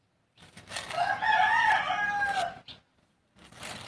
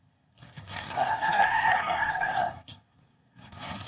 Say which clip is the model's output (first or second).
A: second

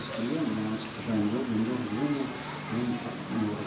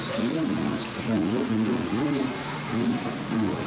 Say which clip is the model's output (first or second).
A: second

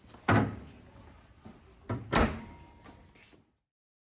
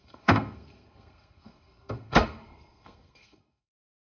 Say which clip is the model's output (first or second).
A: second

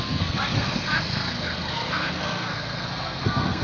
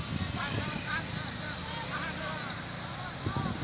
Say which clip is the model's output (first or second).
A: first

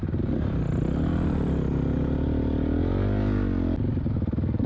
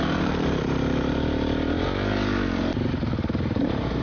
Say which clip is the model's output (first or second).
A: second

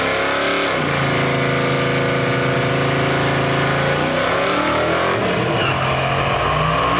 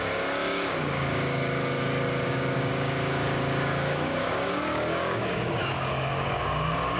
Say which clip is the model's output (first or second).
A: second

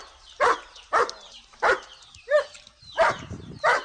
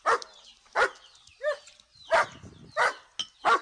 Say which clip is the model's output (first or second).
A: first